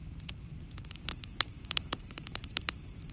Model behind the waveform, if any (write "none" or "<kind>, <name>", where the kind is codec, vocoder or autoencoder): vocoder, BigVGAN v2